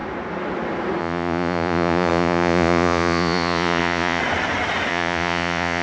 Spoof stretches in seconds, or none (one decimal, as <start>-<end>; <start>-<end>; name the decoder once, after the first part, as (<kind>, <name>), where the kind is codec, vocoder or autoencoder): 1.0-4.2 (vocoder, Vocos); 4.9-5.8